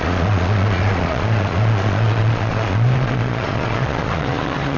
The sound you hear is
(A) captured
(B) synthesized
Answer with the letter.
B